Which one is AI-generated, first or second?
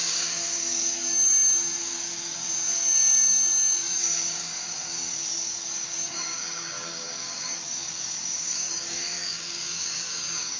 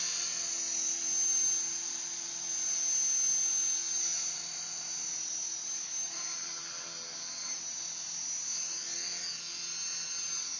first